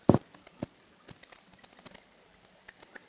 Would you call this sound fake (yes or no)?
no